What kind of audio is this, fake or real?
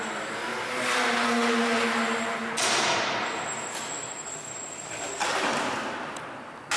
real